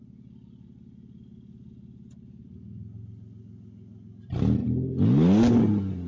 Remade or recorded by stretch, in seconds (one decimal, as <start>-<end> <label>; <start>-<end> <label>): 0.0-6.1 recorded